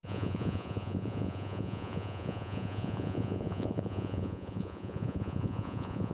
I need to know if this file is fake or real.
fake